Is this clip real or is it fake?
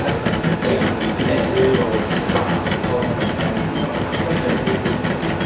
real